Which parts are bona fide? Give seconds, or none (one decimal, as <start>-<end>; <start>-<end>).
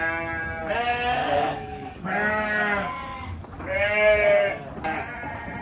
0.0-1.2; 4.6-5.6